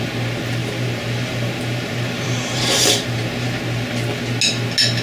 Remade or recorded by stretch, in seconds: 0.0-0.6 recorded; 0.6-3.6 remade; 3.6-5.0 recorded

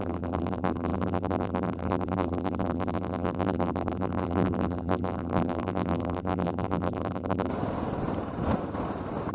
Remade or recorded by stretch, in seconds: 0.0-7.5 remade; 7.5-9.3 recorded

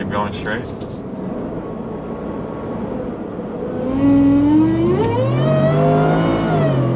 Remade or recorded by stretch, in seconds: 0.0-7.0 recorded

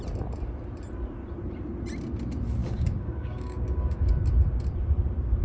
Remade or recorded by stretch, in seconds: 0.0-2.6 recorded; 2.6-4.1 remade; 4.1-5.4 recorded